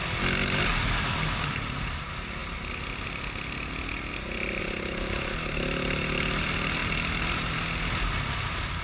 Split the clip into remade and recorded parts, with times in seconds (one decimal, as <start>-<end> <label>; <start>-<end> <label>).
0.0-8.8 recorded